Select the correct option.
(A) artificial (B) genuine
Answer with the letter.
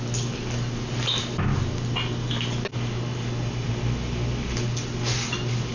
B